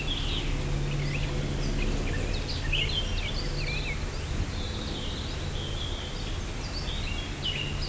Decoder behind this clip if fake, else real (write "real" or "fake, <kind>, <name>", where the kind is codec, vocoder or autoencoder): real